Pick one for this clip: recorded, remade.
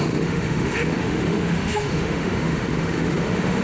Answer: remade